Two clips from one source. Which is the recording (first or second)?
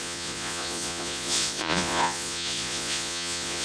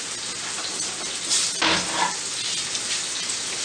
second